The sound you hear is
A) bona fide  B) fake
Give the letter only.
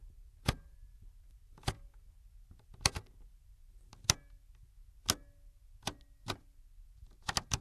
A